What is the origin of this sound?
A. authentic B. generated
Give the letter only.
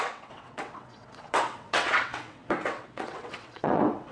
B